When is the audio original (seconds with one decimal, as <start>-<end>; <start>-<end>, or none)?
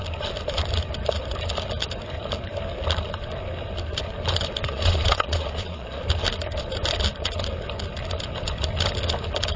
0.0-4.6; 6.0-9.6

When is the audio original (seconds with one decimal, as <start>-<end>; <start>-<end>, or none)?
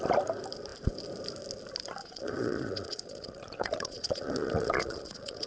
0.0-2.0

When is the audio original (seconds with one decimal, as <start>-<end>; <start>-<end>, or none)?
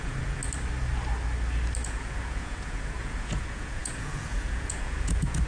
0.4-1.9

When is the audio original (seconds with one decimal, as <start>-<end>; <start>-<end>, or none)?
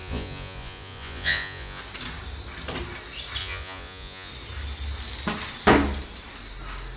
1.8-3.4; 4.3-7.0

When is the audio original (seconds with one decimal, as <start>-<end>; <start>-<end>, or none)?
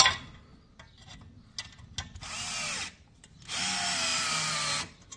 0.0-5.2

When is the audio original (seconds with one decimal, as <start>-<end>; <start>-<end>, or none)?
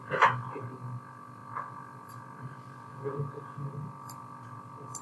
0.0-2.9; 3.7-5.0